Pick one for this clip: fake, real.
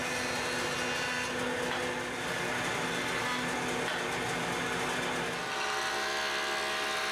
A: real